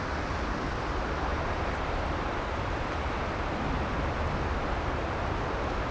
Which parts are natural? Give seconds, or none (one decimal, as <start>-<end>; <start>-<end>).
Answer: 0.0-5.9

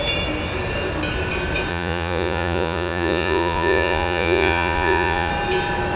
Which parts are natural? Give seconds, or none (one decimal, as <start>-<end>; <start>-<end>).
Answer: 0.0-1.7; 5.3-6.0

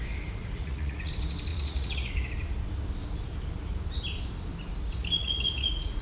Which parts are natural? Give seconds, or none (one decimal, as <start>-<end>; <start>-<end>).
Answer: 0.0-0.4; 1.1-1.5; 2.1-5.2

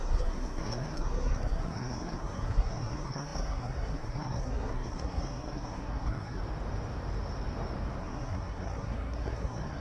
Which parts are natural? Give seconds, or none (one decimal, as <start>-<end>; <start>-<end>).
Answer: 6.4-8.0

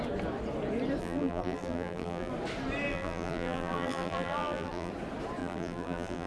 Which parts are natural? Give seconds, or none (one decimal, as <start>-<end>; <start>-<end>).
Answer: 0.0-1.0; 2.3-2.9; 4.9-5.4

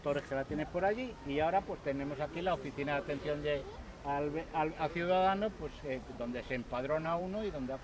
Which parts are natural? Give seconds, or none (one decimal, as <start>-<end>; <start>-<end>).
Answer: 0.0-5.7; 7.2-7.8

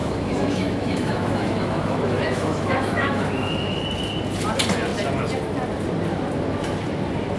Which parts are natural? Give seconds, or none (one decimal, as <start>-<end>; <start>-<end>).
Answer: 3.8-7.4